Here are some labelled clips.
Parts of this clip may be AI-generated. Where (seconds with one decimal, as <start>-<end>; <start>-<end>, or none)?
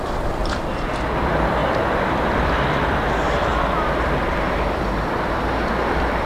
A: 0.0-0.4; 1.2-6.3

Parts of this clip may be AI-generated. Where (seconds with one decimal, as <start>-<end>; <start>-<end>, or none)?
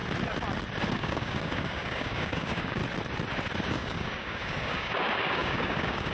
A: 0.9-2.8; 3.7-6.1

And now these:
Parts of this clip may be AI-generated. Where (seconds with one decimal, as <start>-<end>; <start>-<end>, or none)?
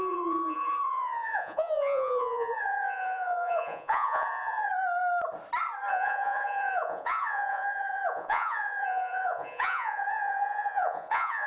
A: 0.0-4.7; 5.9-11.5